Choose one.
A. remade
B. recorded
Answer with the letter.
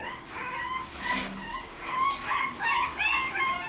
A